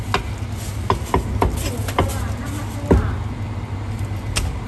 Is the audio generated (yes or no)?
no